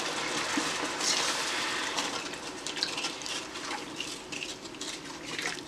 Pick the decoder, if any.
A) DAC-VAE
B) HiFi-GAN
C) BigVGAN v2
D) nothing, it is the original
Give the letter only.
C